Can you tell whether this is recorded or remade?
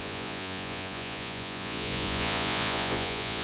remade